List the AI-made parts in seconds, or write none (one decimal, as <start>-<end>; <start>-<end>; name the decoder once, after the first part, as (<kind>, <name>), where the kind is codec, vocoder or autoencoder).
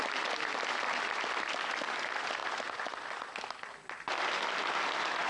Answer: none